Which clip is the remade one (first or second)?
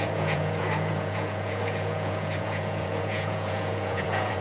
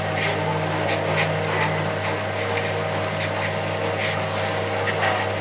first